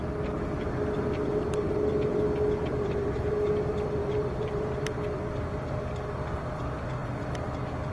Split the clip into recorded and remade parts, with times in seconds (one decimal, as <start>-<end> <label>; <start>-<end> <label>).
0.0-2.6 recorded; 2.6-3.5 remade; 3.5-4.0 recorded; 4.0-5.8 remade; 5.8-7.9 recorded